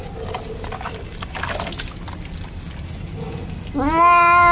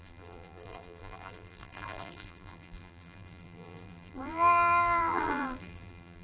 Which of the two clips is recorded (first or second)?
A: first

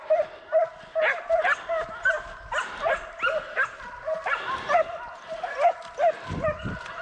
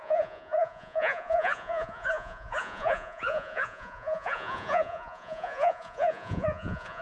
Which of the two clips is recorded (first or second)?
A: first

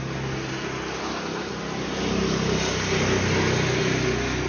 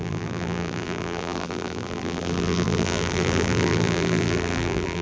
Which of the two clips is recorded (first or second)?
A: first